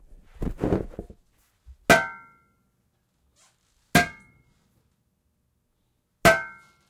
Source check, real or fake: real